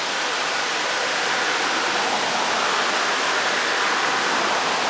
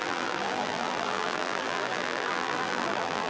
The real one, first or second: first